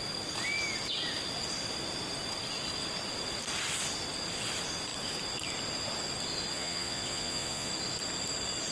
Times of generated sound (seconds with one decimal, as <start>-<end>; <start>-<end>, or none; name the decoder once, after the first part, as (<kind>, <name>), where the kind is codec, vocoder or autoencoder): 6.5-7.7 (vocoder, Vocos)